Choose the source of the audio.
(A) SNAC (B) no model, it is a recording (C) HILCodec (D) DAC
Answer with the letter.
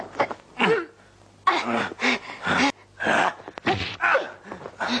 B